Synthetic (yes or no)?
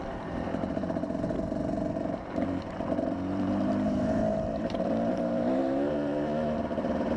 yes